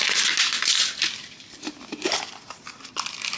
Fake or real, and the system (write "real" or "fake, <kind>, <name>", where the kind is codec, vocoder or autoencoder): real